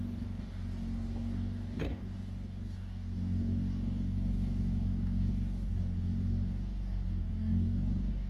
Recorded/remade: remade